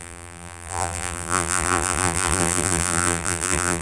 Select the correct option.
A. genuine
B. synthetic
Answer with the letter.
B